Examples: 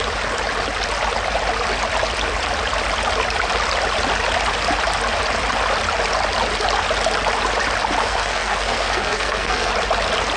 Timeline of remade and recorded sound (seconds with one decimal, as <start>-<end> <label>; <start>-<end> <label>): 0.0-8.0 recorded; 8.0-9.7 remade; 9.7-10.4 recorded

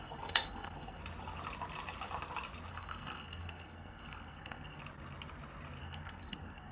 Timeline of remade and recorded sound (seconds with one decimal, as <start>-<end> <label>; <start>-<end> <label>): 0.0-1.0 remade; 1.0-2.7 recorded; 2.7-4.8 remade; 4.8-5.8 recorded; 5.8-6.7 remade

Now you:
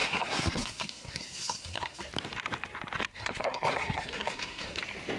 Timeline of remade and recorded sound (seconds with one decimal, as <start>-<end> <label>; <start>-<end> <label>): 0.0-2.0 remade; 2.0-3.1 recorded; 3.1-4.8 remade; 4.8-5.2 recorded